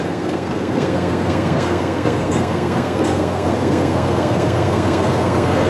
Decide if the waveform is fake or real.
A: fake